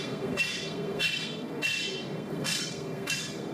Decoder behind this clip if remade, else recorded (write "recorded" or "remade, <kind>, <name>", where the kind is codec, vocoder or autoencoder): remade, codec, SNAC